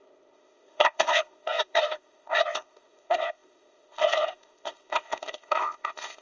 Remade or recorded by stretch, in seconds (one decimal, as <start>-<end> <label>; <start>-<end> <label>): 0.0-6.2 remade